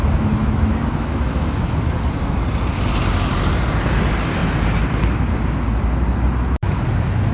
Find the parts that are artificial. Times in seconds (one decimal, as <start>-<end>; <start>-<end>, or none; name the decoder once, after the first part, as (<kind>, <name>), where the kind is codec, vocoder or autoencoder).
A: 0.4-1.8 (autoencoder, DAC-VAE)